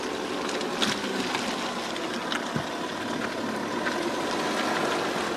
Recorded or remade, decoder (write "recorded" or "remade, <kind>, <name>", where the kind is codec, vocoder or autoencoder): recorded